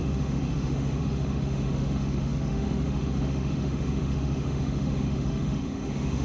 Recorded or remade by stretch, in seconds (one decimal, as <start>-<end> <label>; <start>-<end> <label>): 0.0-6.2 remade